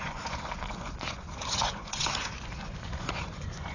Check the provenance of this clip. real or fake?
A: fake